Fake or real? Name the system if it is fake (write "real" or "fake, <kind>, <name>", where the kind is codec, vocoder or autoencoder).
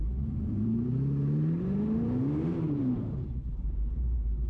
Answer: fake, vocoder, BigVGAN v2